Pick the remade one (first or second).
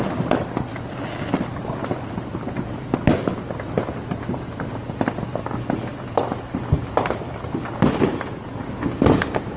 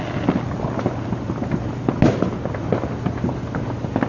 first